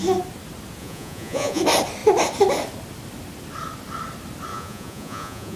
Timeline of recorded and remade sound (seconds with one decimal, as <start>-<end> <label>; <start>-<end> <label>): 0.0-0.8 recorded; 0.8-1.6 remade; 1.6-4.5 recorded; 4.5-5.6 remade

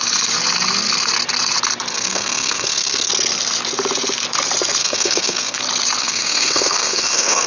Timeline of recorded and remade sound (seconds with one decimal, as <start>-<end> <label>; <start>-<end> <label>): 0.0-1.9 recorded; 1.9-3.1 remade; 3.1-4.8 recorded; 4.8-5.6 remade; 5.6-6.0 recorded; 6.0-7.5 remade